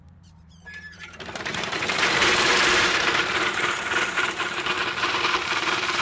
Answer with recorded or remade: remade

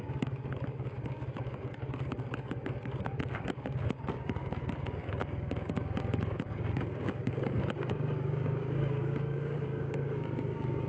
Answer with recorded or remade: remade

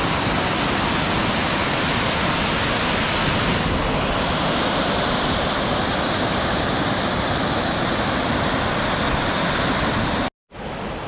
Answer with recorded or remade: recorded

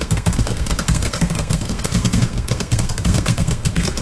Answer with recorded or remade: remade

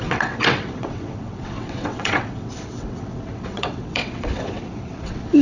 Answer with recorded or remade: remade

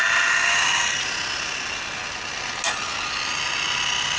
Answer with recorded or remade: recorded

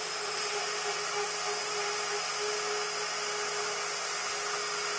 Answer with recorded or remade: recorded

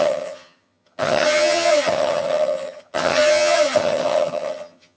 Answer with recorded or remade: remade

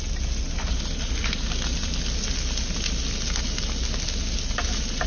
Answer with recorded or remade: recorded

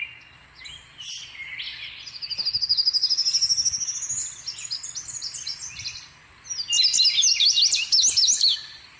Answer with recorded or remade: recorded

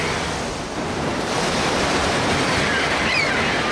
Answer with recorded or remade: recorded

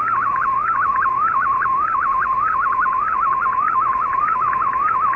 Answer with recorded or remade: remade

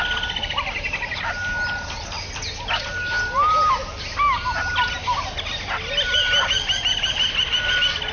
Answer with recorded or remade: recorded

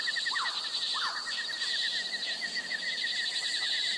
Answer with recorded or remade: recorded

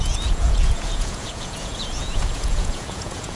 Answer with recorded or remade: remade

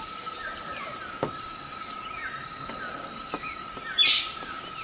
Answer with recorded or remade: recorded